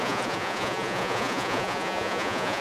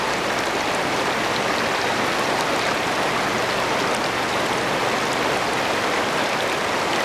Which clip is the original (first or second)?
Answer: second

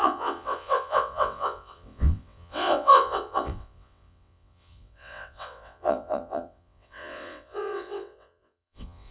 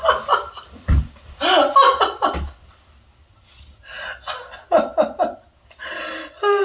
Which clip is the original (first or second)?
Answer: second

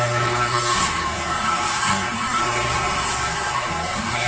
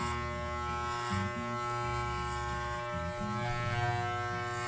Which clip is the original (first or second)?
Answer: second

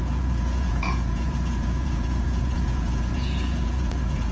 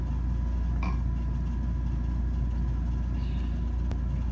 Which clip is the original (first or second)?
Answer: second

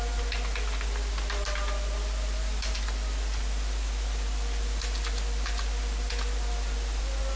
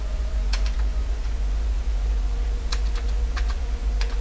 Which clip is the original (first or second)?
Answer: first